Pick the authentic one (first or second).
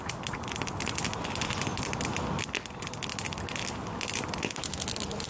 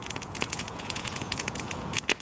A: first